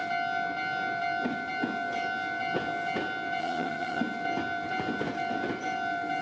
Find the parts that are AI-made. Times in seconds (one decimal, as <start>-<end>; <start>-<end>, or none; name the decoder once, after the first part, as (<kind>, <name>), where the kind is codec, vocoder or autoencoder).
3.4-4.0 (vocoder, HiFi-GAN)